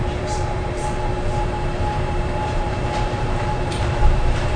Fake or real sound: fake